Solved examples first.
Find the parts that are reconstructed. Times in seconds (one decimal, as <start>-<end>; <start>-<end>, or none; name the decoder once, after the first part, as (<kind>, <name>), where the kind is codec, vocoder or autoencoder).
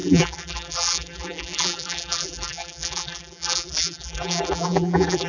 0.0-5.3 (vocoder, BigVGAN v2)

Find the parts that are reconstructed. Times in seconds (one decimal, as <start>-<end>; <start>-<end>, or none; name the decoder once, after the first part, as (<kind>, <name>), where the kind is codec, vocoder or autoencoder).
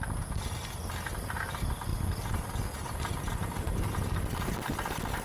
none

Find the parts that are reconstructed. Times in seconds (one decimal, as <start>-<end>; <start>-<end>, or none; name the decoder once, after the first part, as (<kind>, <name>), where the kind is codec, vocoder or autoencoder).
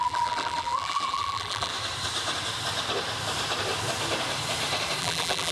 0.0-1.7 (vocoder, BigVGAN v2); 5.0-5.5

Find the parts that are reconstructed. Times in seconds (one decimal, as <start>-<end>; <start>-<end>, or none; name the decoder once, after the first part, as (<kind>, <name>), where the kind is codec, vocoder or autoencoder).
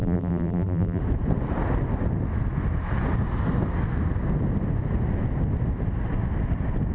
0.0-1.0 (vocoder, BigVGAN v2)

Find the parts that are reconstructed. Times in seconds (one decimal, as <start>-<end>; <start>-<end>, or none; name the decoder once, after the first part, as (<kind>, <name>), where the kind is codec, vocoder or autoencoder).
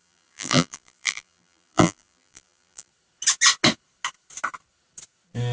0.0-2.9 (vocoder, BigVGAN v2)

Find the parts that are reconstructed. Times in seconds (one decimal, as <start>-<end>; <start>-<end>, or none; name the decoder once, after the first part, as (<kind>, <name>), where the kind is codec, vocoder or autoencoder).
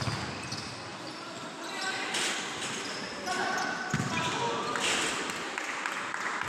none